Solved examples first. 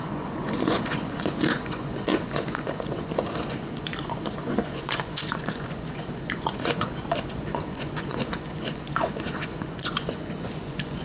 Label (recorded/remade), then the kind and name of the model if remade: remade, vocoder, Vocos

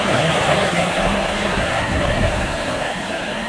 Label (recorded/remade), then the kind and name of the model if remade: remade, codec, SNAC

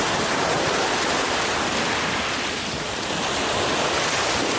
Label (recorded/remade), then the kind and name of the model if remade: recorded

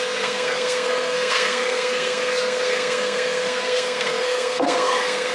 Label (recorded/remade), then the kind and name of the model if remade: remade, codec, SNAC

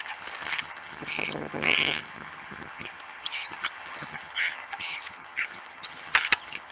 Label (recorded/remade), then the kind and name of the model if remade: remade, vocoder, HiFi-GAN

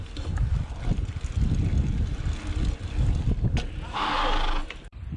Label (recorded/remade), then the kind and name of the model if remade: recorded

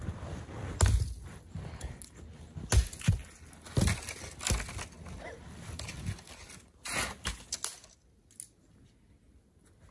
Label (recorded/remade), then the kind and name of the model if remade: recorded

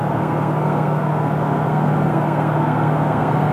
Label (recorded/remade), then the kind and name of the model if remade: remade, codec, SNAC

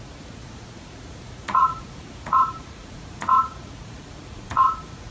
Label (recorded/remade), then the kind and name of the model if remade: remade, vocoder, Vocos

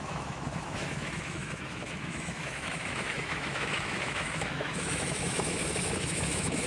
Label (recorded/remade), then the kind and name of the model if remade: remade, autoencoder, DAC-VAE